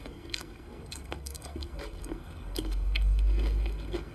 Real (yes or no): no